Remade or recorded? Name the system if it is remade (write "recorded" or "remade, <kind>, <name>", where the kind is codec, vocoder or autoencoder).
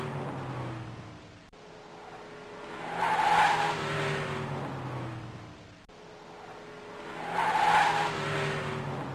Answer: recorded